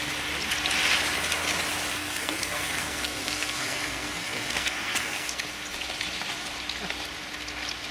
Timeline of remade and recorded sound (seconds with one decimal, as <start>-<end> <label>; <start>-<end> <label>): 0.0-1.9 recorded; 1.9-5.4 remade; 5.4-7.9 recorded